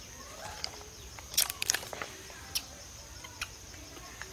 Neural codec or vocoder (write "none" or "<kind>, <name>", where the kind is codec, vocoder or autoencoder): vocoder, BigVGAN v2